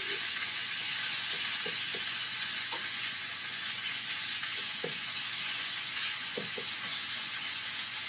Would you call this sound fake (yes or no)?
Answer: yes